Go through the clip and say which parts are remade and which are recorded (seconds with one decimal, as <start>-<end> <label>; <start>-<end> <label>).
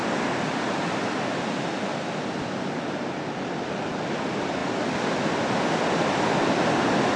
0.0-7.2 recorded